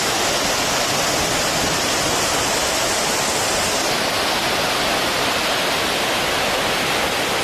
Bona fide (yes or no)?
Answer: yes